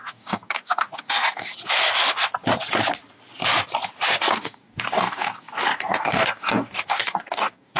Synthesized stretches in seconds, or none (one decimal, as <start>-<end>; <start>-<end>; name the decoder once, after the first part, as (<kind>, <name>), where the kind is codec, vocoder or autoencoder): 0.0-1.5 (codec, DAC); 4.2-7.8